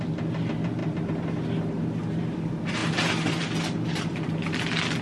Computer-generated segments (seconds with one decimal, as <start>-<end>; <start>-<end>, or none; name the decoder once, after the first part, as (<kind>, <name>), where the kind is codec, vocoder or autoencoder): none